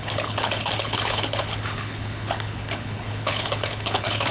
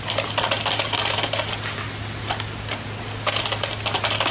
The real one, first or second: second